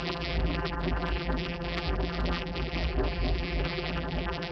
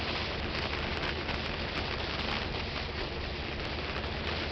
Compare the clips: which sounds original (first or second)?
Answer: second